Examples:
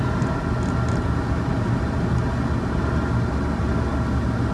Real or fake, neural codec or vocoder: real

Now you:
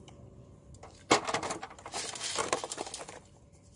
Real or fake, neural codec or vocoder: real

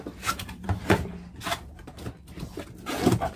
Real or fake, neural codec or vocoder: real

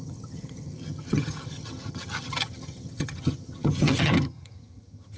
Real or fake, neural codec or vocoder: fake, vocoder, HiFi-GAN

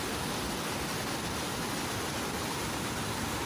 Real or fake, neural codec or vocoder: real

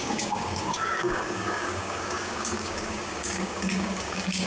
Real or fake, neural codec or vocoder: fake, codec, DAC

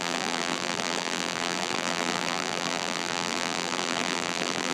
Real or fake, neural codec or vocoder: fake, vocoder, BigVGAN v2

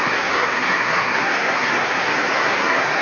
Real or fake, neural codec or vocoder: fake, codec, SNAC